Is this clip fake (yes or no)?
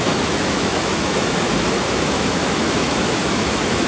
yes